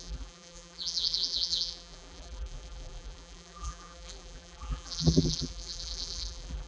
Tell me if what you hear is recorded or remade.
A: remade